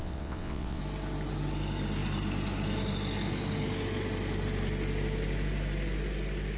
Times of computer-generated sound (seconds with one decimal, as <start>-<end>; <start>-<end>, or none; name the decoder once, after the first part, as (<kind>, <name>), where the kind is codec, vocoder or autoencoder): 0.0-0.8 (vocoder, WaveNeXt)